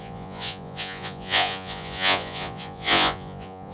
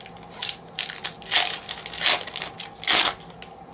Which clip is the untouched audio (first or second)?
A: second